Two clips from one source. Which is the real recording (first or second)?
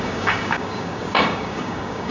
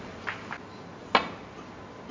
second